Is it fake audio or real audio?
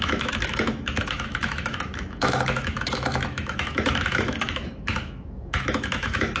fake